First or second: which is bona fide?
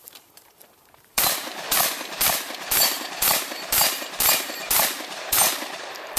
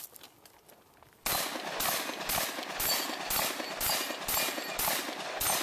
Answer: second